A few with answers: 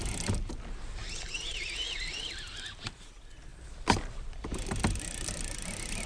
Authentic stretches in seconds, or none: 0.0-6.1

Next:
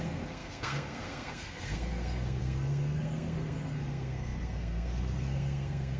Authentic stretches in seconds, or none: none

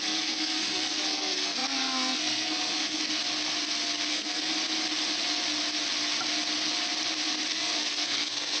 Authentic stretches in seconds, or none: 3.2-4.1; 4.5-7.5

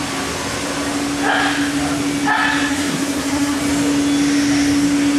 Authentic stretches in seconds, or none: 0.0-2.7; 3.6-5.2